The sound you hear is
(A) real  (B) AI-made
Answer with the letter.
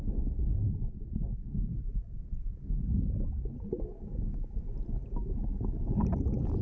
A